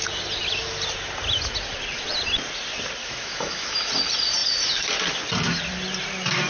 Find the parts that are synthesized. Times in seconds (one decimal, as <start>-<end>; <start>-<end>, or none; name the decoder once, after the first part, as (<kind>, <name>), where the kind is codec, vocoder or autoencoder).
3.0-3.9 (autoencoder, DAC-VAE)